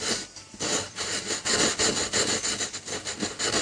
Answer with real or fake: real